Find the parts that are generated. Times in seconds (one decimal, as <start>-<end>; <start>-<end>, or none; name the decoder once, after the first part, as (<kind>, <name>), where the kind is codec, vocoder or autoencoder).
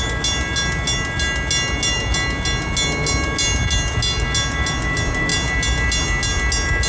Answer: none